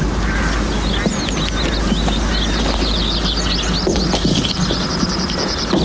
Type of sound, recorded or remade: recorded